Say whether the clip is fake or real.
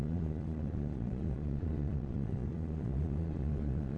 fake